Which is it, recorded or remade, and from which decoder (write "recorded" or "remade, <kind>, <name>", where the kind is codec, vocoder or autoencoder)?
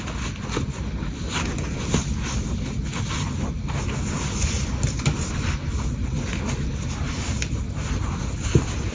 recorded